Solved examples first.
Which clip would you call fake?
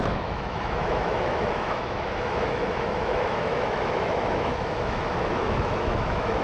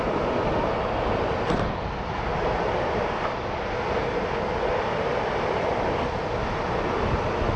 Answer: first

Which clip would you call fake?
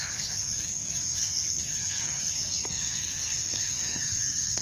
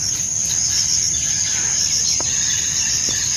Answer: first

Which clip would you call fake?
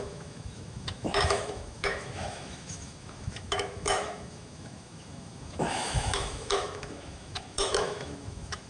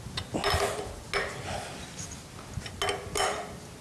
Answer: first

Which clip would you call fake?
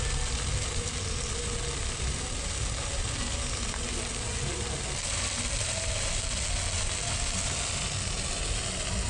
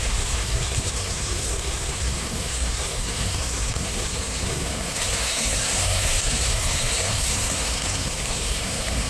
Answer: second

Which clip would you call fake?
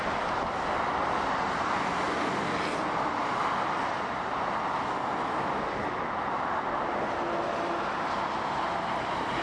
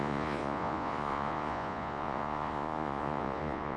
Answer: second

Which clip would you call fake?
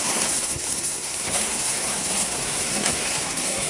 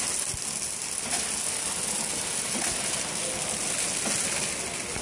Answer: first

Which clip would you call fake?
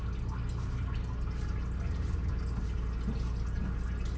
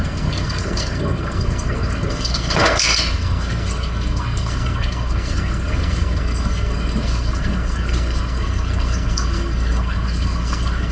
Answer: second